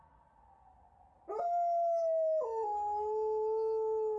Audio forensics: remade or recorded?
recorded